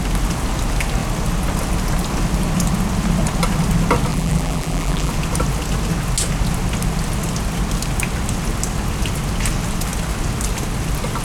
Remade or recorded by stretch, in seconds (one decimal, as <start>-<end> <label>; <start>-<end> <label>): 0.0-4.1 recorded; 4.1-5.1 remade; 5.1-11.2 recorded